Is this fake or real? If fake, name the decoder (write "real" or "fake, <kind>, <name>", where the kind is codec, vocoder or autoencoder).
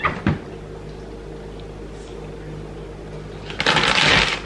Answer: real